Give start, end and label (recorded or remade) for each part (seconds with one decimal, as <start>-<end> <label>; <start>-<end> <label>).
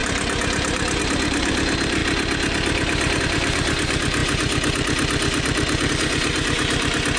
0.0-1.0 recorded; 1.0-2.0 remade; 2.0-3.2 recorded; 3.2-7.2 remade